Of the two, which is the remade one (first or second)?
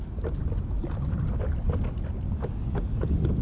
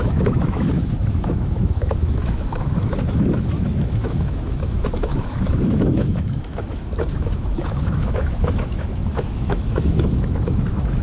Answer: second